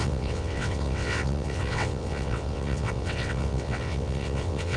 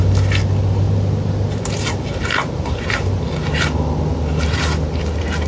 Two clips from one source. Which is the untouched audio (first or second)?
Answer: second